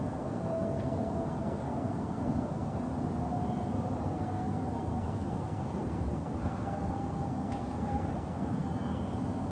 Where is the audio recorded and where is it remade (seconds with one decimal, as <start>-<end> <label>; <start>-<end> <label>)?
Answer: 0.0-2.9 remade; 2.9-4.0 recorded; 4.0-9.5 remade

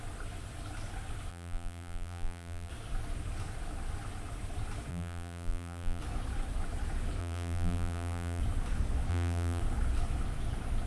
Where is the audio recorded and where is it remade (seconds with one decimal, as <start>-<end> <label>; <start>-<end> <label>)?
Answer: 0.0-1.3 recorded; 1.3-2.7 remade; 2.7-4.9 recorded; 4.9-6.0 remade; 6.0-7.2 recorded; 7.2-8.4 remade; 8.4-9.1 recorded; 9.1-9.6 remade; 9.6-10.9 recorded

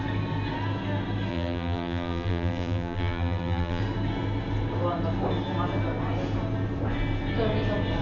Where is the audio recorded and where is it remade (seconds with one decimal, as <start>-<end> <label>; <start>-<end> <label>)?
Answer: 0.0-1.3 recorded; 1.3-3.8 remade; 3.8-8.0 recorded

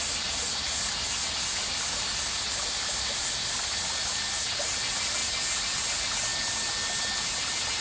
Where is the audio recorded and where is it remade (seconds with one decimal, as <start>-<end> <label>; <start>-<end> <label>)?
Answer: 0.0-7.8 recorded

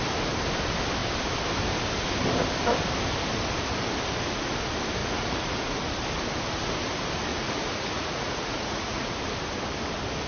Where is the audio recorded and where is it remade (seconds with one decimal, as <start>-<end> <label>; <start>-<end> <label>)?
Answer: 0.0-5.0 recorded; 5.0-5.8 remade; 5.8-7.3 recorded; 7.3-9.1 remade; 9.1-10.3 recorded

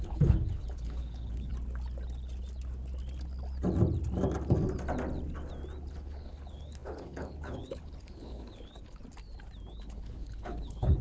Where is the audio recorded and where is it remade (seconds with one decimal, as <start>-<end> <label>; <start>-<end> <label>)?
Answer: 0.0-1.5 remade; 1.5-5.9 recorded; 5.9-9.0 remade; 9.0-9.7 recorded; 9.7-11.0 remade

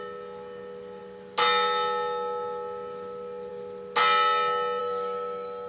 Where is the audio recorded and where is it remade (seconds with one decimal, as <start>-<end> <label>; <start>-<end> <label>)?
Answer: 0.0-4.8 recorded; 4.8-5.7 remade